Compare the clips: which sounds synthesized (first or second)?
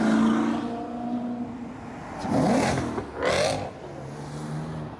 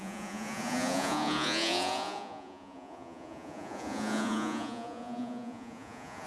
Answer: second